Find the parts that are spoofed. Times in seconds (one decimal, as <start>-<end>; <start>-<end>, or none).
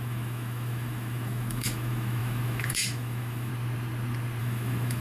0.0-3.5; 4.4-5.0